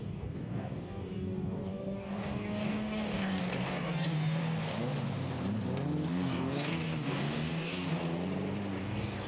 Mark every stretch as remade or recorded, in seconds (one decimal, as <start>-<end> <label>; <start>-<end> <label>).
0.0-4.4 remade; 4.4-6.1 recorded; 6.1-8.0 remade; 8.0-8.8 recorded; 8.8-9.3 remade

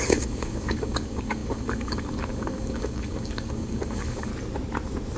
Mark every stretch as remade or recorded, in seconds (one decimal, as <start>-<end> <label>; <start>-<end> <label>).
0.0-4.3 remade; 4.3-5.2 recorded

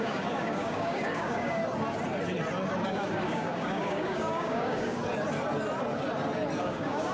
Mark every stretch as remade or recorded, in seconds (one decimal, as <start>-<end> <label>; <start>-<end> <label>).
0.0-1.6 remade; 1.6-2.9 recorded; 2.9-5.0 remade; 5.0-6.6 recorded; 6.6-7.1 remade

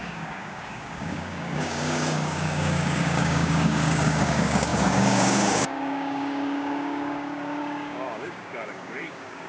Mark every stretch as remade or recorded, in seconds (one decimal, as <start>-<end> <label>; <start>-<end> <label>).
0.0-9.5 remade

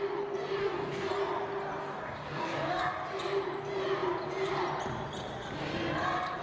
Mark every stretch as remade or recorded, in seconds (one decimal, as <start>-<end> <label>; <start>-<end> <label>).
0.0-0.6 recorded; 0.6-1.1 remade; 1.1-1.8 recorded; 1.8-2.8 remade; 2.8-6.4 recorded

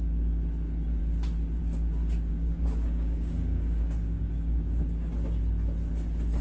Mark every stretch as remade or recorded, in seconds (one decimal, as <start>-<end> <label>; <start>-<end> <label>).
0.0-2.3 recorded; 2.3-4.8 remade; 4.8-6.4 recorded